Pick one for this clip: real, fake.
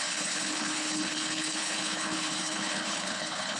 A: fake